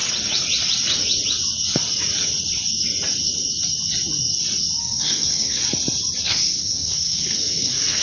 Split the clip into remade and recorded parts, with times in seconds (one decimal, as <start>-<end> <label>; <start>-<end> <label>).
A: 0.0-4.8 recorded; 4.8-5.6 remade; 5.6-6.2 recorded; 6.2-8.0 remade